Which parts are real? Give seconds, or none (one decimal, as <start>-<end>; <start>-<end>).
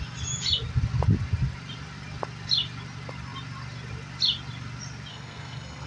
0.0-5.1